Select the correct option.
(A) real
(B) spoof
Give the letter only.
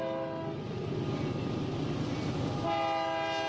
A